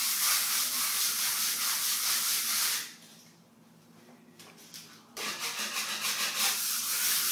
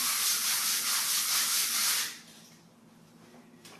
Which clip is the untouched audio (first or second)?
second